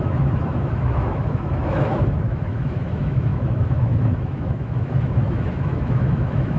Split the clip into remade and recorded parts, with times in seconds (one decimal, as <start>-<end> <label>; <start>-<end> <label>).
0.0-6.6 remade